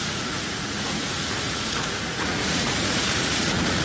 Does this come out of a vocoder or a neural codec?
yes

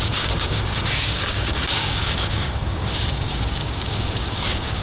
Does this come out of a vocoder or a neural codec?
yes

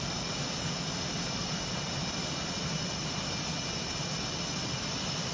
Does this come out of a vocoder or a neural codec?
no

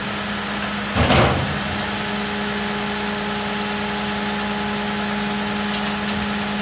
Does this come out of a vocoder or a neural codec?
no